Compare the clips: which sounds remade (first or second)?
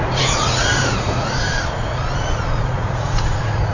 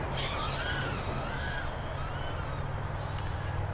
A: first